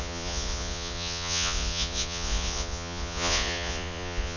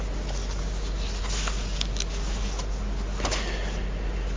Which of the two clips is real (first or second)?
second